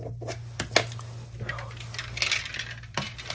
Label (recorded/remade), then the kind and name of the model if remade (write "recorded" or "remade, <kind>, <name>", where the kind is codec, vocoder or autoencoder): recorded